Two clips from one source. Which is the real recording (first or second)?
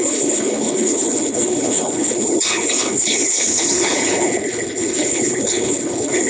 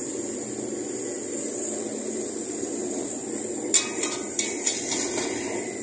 second